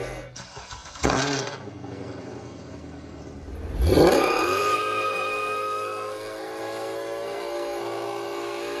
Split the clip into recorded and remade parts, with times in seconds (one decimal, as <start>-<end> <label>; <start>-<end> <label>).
0.0-3.2 remade; 3.2-4.1 recorded; 4.1-8.8 remade